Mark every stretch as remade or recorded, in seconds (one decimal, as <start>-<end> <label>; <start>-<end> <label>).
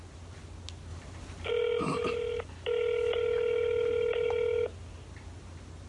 0.0-5.9 recorded